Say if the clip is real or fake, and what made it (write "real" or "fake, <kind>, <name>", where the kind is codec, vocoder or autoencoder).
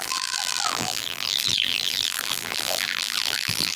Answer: fake, vocoder, BigVGAN v2